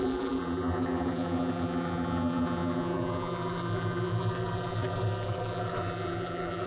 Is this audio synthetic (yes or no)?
yes